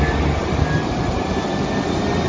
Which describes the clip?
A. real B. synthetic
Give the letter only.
A